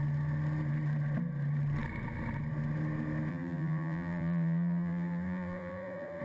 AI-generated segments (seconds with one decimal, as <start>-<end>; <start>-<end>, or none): 3.3-6.2